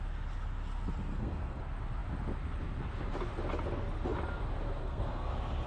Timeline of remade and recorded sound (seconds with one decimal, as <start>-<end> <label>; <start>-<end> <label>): 0.0-1.1 recorded; 1.1-1.6 remade; 1.6-4.8 recorded; 4.8-5.3 remade; 5.3-5.7 recorded